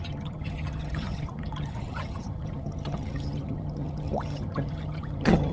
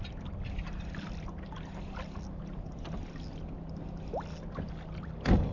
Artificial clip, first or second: first